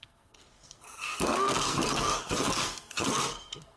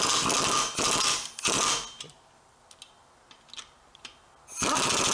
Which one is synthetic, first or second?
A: first